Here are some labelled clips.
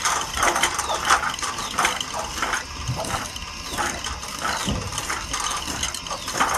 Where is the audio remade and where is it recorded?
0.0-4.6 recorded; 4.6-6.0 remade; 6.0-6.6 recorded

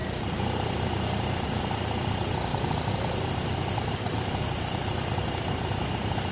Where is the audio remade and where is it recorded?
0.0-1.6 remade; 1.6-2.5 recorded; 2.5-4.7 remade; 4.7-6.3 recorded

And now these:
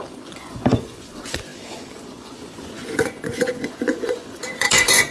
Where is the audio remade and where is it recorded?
0.0-5.1 remade

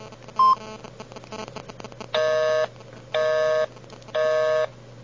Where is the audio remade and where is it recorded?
0.0-5.0 recorded